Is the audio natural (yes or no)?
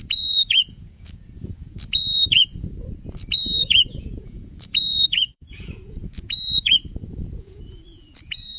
no